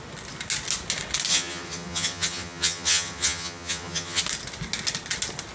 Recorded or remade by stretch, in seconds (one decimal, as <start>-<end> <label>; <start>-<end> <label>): 0.0-1.3 recorded; 1.3-4.2 remade; 4.2-5.5 recorded